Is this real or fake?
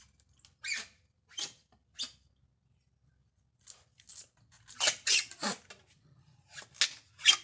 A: real